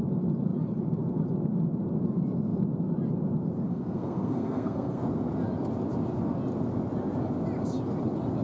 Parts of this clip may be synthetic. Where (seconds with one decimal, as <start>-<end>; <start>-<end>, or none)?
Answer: 3.7-5.0